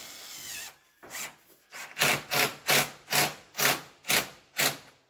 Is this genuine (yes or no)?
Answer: yes